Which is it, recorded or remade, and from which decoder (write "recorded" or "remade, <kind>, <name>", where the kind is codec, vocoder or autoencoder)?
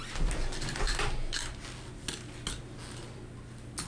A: recorded